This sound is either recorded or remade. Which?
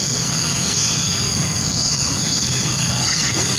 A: remade